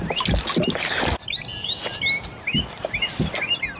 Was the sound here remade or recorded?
recorded